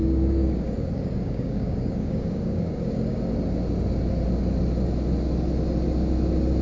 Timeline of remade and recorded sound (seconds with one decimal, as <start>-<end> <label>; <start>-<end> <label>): 0.0-3.2 remade; 3.2-6.6 recorded